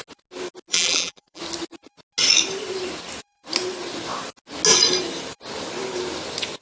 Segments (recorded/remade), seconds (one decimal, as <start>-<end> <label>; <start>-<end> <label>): 0.0-0.7 recorded; 0.7-1.4 remade; 1.4-6.6 recorded